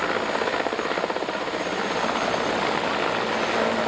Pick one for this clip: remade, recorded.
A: recorded